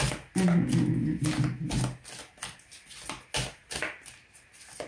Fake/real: real